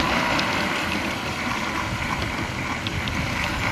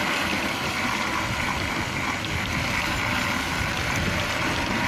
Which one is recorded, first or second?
second